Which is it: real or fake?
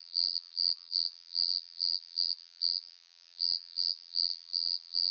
fake